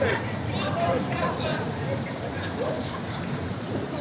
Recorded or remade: remade